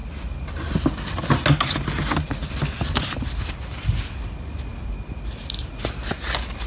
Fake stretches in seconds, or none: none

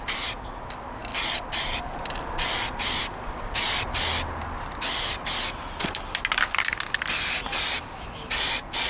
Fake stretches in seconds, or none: none

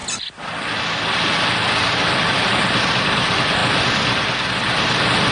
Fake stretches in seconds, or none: none

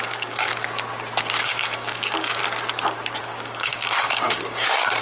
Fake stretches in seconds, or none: 0.0-0.5 (codec, DAC); 1.4-2.4; 3.2-5.0

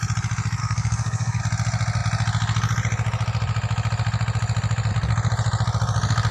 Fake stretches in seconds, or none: 0.6-1.4 (codec, SNAC)